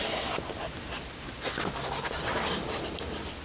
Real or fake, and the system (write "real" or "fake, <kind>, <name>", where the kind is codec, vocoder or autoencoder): real